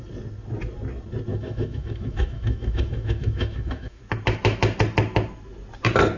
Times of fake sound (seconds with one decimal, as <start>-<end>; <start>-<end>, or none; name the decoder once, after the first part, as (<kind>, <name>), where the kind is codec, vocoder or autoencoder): 1.3-4.0 (autoencoder, DAC-VAE)